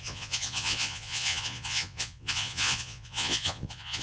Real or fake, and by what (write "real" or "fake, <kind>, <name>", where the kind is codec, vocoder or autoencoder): fake, vocoder, Vocos